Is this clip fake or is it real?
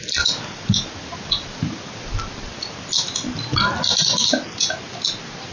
real